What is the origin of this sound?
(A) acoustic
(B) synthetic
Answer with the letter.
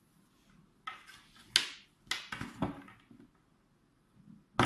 A